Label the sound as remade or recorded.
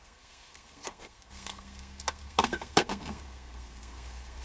remade